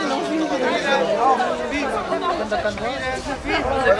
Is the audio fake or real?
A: real